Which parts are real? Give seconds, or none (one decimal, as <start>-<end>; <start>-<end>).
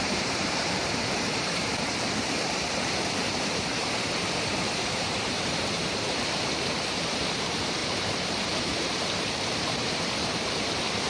1.7-2.2